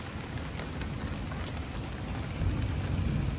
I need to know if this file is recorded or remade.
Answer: recorded